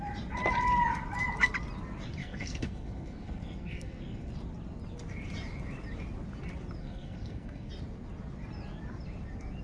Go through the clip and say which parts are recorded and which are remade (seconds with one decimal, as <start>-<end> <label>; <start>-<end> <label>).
0.0-2.2 recorded; 2.2-4.3 remade; 4.3-6.8 recorded; 6.8-7.7 remade; 7.7-9.6 recorded